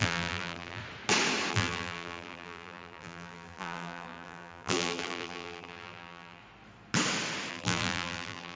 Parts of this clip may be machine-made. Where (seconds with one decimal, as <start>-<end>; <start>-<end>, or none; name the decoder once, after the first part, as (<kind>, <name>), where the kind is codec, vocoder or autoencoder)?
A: 0.0-0.8 (vocoder, BigVGAN v2); 1.5-6.4; 7.5-8.6